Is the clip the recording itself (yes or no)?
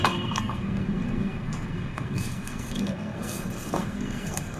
no